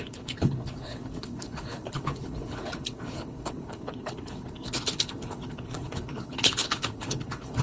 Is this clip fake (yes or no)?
yes